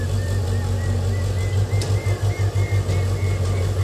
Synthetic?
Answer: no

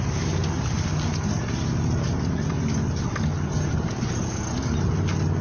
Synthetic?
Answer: no